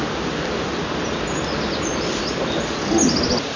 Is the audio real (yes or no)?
yes